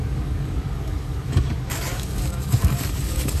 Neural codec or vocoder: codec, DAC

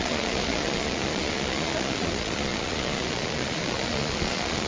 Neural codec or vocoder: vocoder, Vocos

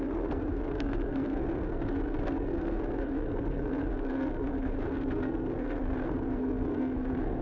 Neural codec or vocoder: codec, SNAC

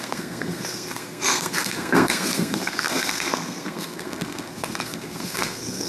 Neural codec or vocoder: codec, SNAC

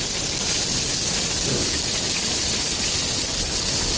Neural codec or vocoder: none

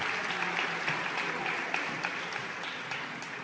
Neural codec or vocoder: none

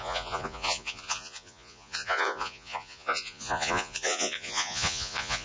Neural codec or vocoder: vocoder, Vocos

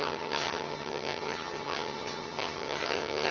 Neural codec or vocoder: vocoder, HiFi-GAN